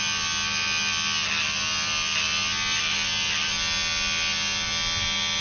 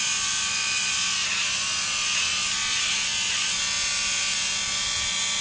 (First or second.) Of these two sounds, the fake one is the second